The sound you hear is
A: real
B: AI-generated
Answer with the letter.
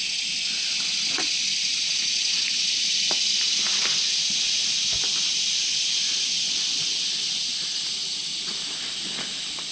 A